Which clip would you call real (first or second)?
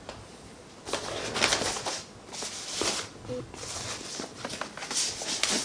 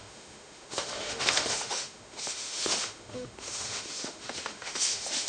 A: first